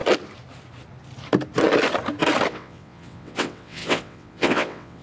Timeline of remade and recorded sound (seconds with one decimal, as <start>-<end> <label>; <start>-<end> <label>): 0.0-2.5 recorded; 2.5-5.0 remade